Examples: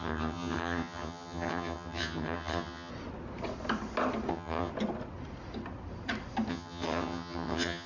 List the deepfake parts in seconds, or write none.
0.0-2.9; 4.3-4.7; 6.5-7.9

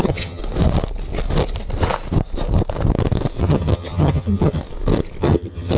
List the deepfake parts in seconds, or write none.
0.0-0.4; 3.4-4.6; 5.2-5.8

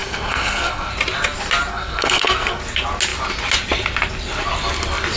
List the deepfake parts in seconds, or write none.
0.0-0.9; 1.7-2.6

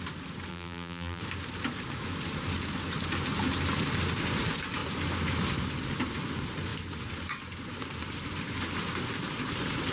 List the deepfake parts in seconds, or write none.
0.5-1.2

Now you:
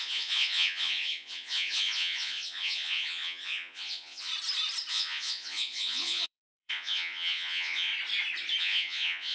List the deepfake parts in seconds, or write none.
0.0-4.3; 4.9-7.9; 8.6-9.3

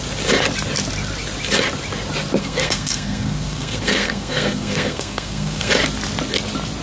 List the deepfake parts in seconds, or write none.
2.4-5.7